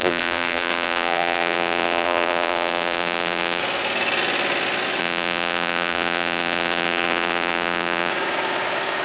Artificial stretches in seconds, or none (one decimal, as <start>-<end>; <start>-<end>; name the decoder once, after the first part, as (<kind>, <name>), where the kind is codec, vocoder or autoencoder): 0.0-3.6 (vocoder, BigVGAN v2); 5.0-8.1